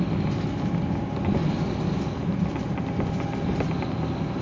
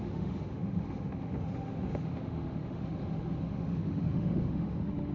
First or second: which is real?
first